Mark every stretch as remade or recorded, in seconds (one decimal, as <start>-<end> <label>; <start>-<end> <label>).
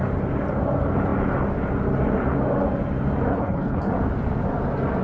0.0-3.3 recorded; 3.3-3.9 remade; 3.9-5.0 recorded